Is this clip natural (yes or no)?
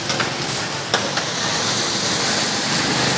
yes